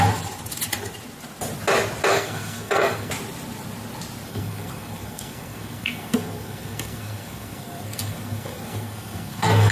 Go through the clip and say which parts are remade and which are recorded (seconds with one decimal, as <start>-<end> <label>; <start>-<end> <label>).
0.0-2.1 recorded; 2.1-3.1 remade; 3.1-4.3 recorded; 4.3-9.7 remade